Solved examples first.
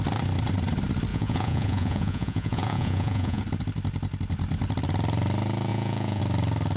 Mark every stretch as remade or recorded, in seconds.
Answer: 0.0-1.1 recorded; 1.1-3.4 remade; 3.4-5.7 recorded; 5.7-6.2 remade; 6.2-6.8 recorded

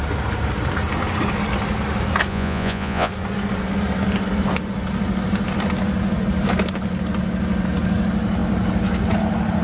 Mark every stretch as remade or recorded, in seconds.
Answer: 0.0-2.3 recorded; 2.3-3.1 remade; 3.1-9.6 recorded

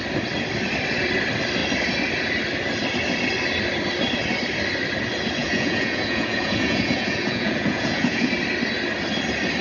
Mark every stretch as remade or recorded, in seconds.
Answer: 0.0-5.4 recorded; 5.4-8.3 remade; 8.3-9.6 recorded

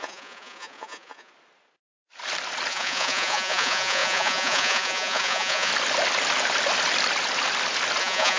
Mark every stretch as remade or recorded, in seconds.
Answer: 0.0-1.3 remade; 1.3-2.7 recorded; 2.7-5.7 remade; 5.7-8.0 recorded; 8.0-8.4 remade

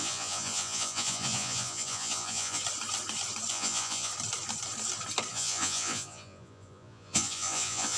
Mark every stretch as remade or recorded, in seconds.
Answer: 0.0-2.6 remade; 2.6-3.5 recorded; 3.5-4.1 remade; 4.1-5.3 recorded; 5.3-8.0 remade

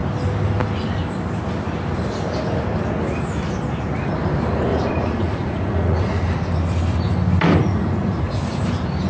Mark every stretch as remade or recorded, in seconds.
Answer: 0.0-4.7 recorded; 4.7-6.3 remade; 6.3-7.6 recorded; 7.6-8.3 remade; 8.3-9.1 recorded

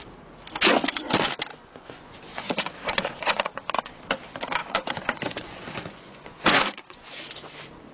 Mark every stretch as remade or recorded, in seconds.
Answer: 0.0-1.5 recorded; 1.5-4.0 remade; 4.0-4.6 recorded; 4.6-7.2 remade; 7.2-7.9 recorded

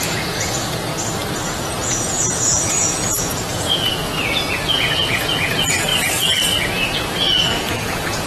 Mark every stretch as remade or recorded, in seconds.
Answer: 0.0-0.9 remade; 0.9-1.7 recorded; 1.7-5.9 remade; 5.9-6.6 recorded; 6.6-8.3 remade